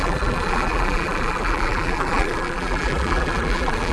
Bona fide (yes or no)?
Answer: no